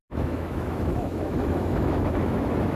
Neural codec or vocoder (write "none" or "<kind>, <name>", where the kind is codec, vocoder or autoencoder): autoencoder, DAC-VAE